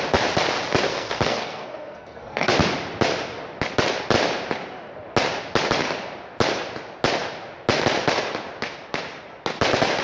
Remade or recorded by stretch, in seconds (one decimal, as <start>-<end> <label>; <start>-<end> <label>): 0.0-0.9 recorded; 0.9-2.5 remade; 2.5-10.0 recorded

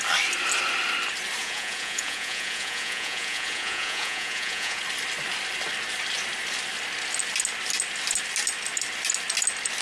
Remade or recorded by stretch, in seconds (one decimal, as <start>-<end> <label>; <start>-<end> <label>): 0.0-1.4 recorded; 1.4-4.8 remade; 4.8-9.8 recorded